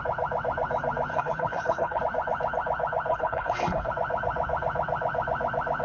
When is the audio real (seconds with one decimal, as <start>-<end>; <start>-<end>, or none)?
0.0-1.1; 2.0-3.1; 3.9-5.8